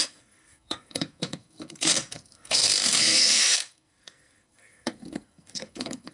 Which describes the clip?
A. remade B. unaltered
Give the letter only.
A